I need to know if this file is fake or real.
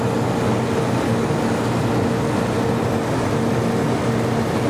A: real